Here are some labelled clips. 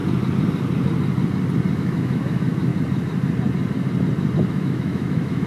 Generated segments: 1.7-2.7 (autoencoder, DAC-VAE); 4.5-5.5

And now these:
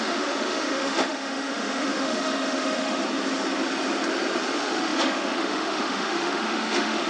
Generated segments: 0.0-3.0 (autoencoder, DAC-VAE); 4.5-7.1

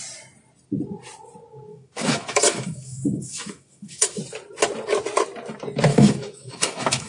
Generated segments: 1.7-4.2 (autoencoder, DAC-VAE); 5.9-7.1

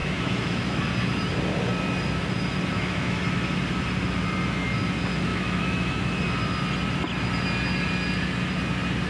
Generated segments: 0.0-0.8 (autoencoder, DAC-VAE); 2.7-3.2; 5.3-6.2

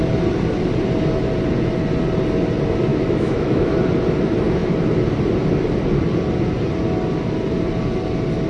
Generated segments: 2.9-3.7 (autoencoder, DAC-VAE)